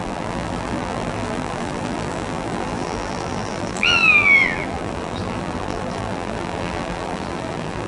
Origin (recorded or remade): remade